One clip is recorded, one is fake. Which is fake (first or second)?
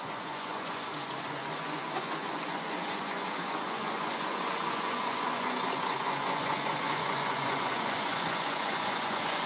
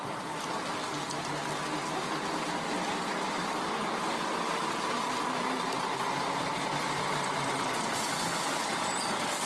first